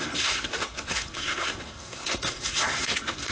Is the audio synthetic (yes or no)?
yes